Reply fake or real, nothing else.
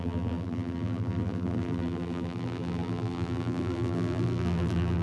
fake